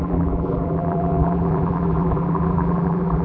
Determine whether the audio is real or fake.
fake